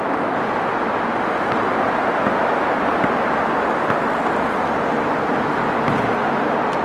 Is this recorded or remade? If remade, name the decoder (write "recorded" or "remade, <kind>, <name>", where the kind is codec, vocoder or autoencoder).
recorded